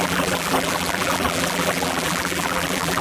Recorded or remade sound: remade